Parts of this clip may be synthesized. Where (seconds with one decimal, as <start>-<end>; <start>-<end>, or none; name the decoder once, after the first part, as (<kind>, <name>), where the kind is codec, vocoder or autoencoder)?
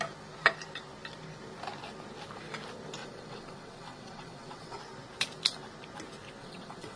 3.0-4.8 (vocoder, WaveNeXt); 6.4-7.0